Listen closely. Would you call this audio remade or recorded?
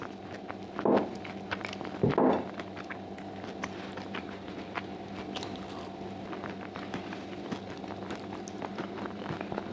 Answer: recorded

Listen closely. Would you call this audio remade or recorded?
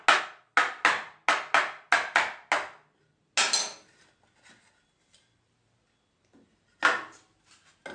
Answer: recorded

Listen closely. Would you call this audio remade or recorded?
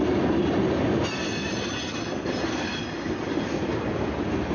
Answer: recorded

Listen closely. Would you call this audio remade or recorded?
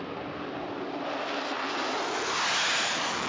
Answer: recorded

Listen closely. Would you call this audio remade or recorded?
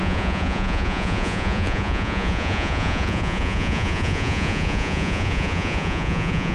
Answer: remade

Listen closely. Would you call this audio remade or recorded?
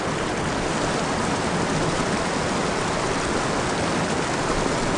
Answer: recorded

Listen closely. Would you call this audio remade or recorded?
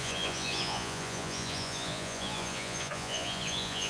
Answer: remade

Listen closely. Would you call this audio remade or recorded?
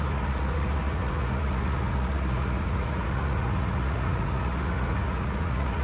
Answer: remade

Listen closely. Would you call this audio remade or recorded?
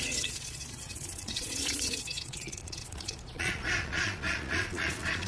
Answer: remade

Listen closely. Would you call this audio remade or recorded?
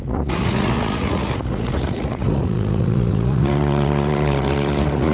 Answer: remade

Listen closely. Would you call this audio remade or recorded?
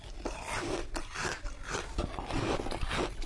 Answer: recorded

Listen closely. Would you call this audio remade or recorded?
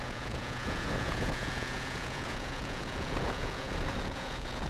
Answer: remade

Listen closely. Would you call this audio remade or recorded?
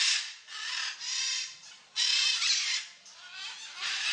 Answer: recorded